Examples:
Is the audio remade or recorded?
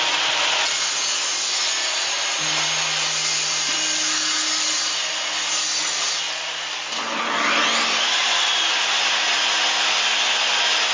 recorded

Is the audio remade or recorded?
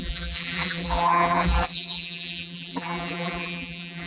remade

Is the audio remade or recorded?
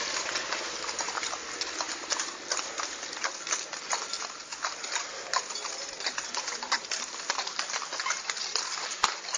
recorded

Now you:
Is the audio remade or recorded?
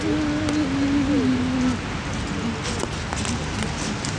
recorded